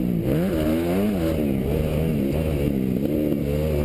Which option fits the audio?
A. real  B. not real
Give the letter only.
A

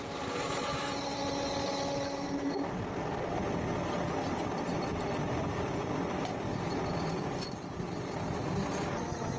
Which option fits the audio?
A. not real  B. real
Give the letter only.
B